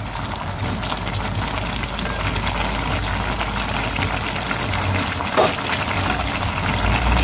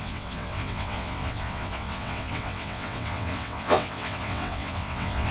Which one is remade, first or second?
second